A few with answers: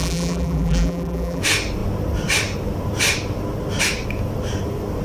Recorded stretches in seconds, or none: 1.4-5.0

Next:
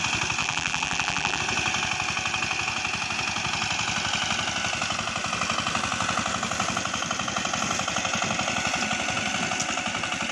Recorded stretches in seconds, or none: 0.0-0.4; 1.4-10.3

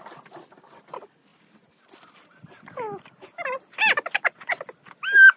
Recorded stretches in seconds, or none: 0.0-1.3; 4.5-5.4

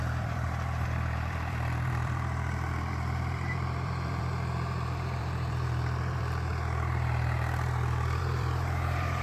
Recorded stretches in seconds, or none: 6.5-8.2

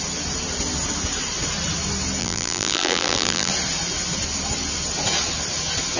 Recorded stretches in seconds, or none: 0.0-2.2; 3.5-6.0

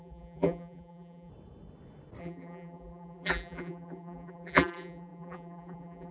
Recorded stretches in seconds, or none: 1.3-2.2

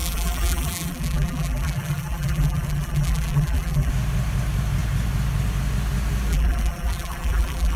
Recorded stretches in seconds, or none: 3.9-6.3

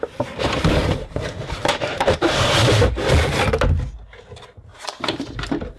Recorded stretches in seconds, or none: 0.0-0.8; 3.5-4.7